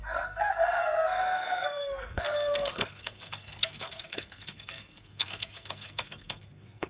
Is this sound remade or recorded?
remade